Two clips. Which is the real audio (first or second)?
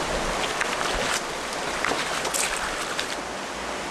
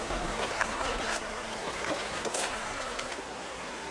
first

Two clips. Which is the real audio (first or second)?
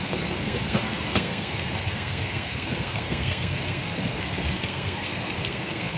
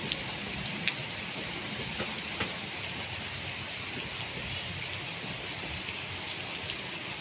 second